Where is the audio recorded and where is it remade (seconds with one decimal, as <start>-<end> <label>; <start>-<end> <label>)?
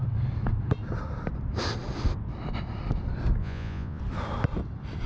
0.0-3.4 recorded; 3.4-4.0 remade; 4.0-5.1 recorded